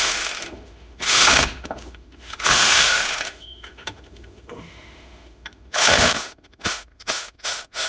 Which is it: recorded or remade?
remade